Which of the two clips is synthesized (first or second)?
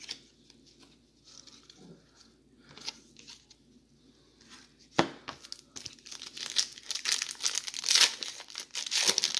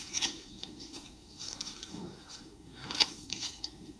second